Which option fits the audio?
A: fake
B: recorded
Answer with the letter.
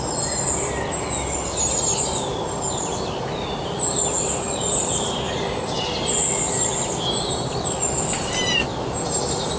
B